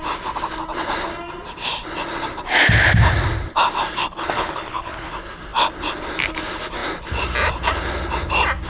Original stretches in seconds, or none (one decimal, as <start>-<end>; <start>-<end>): 0.0-4.0; 5.1-8.7